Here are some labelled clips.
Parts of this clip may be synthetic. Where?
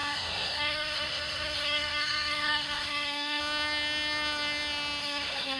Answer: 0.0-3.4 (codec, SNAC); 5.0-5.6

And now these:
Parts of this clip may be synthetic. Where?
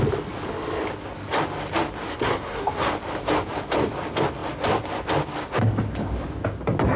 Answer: 2.1-2.9 (codec, SNAC)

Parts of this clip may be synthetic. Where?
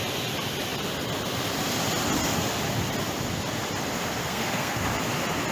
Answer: 4.2-4.9 (codec, SNAC)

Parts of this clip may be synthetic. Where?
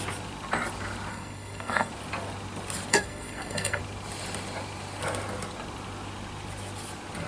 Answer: 1.1-1.9 (codec, SNAC); 2.9-3.8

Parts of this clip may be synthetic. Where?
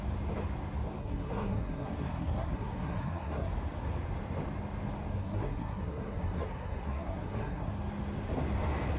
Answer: 1.0-3.5 (codec, SNAC); 5.2-7.7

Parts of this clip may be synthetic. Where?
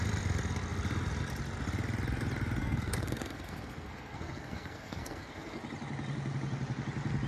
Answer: 2.6-5.6 (codec, SNAC)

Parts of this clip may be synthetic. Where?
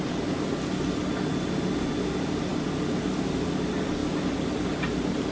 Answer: none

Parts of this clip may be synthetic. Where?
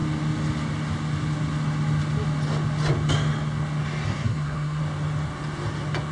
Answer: 4.1-4.8 (codec, SNAC)